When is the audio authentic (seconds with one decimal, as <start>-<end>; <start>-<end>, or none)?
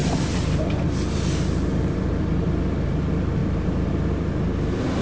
0.0-5.0